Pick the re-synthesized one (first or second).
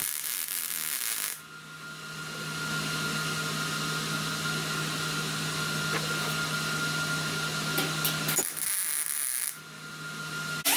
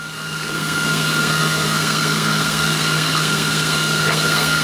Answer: second